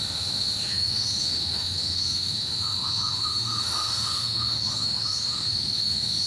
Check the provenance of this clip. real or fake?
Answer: fake